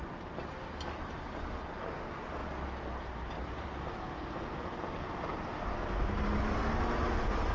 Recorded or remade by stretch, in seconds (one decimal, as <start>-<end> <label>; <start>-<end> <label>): 0.0-7.5 recorded